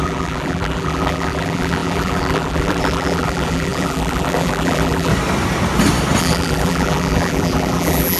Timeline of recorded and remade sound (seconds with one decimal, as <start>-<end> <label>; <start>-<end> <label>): 0.0-5.1 remade; 5.1-6.2 recorded; 6.2-8.2 remade